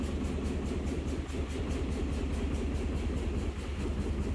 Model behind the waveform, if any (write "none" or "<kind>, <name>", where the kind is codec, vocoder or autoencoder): none